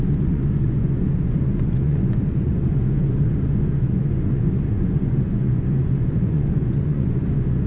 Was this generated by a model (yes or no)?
yes